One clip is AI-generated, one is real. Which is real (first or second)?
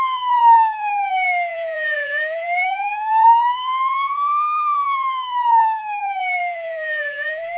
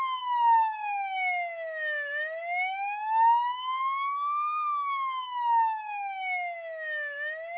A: second